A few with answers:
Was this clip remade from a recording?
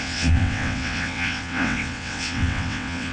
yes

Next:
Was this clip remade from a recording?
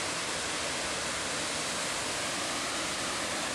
no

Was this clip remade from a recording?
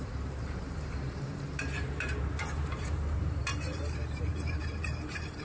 yes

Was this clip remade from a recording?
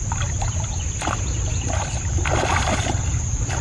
no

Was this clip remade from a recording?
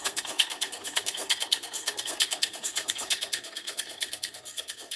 yes